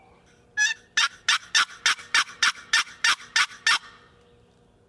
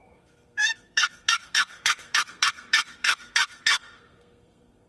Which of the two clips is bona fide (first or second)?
first